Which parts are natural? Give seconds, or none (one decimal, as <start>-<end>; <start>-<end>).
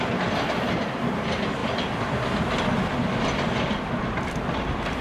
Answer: 0.0-5.0